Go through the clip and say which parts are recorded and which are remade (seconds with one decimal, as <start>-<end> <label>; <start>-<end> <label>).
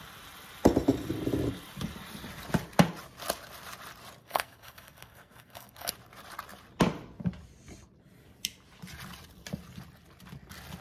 0.0-4.2 recorded; 4.2-5.9 remade; 5.9-10.8 recorded